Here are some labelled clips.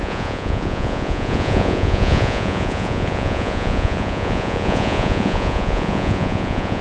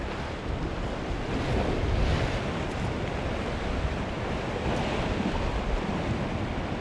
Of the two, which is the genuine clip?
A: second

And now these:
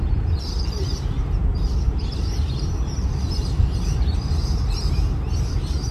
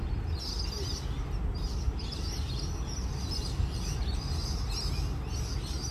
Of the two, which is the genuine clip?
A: second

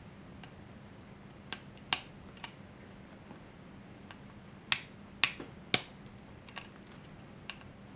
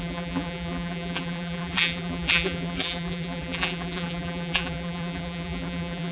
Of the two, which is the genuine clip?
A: first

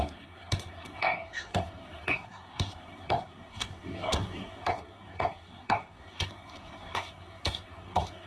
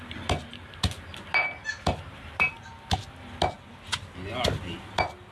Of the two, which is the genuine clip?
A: second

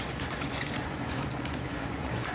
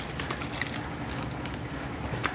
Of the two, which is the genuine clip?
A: second